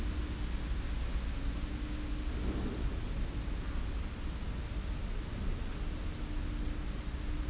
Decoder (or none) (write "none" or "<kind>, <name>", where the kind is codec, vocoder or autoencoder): none